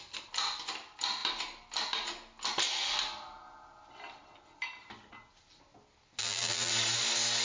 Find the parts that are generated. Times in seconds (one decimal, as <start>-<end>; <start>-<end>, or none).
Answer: 6.2-6.7